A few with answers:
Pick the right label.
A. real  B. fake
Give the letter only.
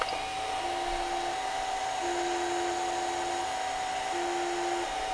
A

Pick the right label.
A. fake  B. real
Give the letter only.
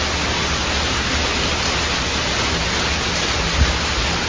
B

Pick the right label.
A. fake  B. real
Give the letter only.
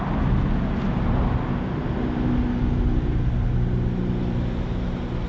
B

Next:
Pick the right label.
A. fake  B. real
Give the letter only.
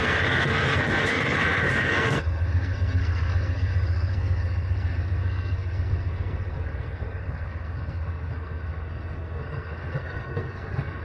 A